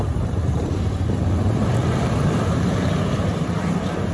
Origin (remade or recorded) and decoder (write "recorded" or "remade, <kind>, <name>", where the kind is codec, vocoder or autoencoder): remade, vocoder, BigVGAN v2